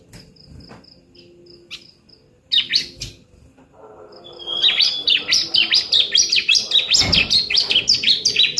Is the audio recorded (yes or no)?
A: yes